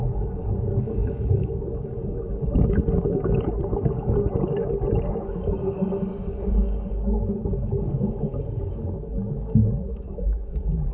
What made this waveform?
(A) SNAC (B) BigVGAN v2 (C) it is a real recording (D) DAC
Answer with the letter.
D